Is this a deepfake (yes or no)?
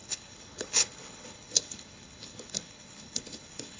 yes